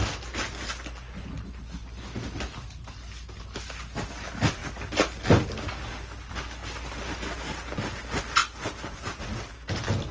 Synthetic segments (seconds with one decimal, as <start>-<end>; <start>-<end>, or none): none